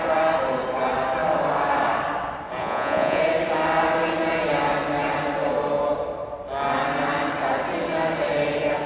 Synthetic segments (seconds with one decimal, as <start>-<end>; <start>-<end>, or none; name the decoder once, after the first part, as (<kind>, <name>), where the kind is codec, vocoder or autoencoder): 2.6-3.2 (vocoder, Vocos)